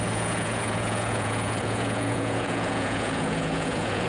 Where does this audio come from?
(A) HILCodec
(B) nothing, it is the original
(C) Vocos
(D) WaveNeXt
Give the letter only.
C